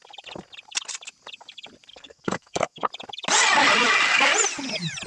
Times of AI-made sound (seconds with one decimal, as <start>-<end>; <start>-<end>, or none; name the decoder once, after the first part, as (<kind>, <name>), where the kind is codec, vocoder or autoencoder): 1.9-2.9 (codec, SNAC)